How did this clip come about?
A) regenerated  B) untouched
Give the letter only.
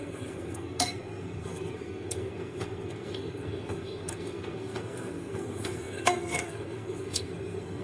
A